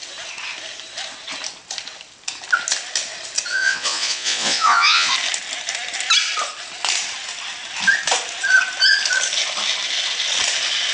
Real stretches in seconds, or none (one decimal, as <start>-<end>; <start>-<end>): 0.0-3.5; 5.1-10.9